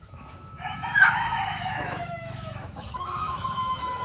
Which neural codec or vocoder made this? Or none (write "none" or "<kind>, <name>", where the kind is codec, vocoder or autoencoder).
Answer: autoencoder, DAC-VAE